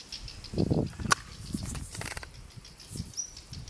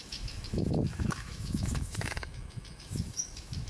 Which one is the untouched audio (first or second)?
first